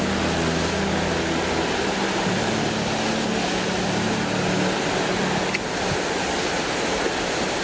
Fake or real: real